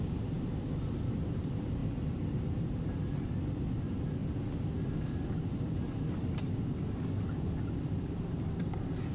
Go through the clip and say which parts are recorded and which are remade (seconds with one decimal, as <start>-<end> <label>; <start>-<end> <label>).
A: 0.0-9.1 recorded